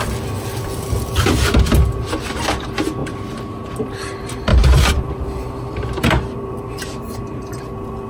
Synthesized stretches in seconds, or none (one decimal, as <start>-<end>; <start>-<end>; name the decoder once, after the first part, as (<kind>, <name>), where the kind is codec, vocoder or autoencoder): 4.5-7.6 (vocoder, BigVGAN v2)